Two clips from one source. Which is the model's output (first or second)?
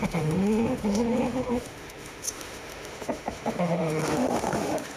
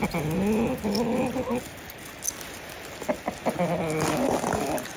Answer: first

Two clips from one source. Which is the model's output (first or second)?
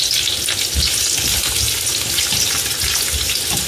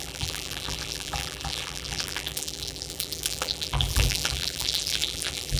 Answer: second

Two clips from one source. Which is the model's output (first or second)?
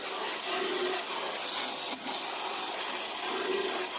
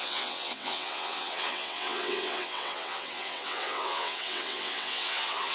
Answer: second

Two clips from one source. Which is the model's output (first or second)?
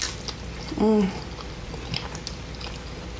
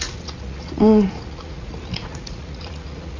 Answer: second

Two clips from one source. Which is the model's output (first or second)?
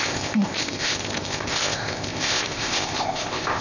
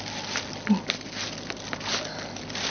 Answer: first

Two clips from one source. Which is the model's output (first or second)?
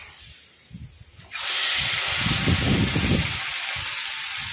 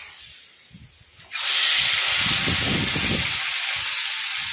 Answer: first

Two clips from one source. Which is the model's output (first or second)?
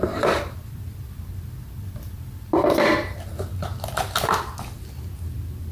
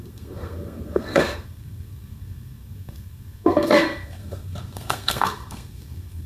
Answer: second